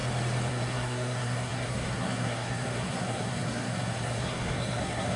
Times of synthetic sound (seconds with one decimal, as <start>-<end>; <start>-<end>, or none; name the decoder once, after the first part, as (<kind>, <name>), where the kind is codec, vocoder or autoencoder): 0.5-5.2 (codec, SNAC)